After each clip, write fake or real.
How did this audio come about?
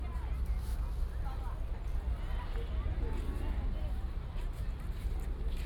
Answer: real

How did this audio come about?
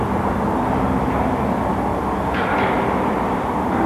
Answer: real